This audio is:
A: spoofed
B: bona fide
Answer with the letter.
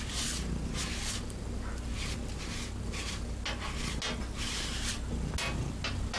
B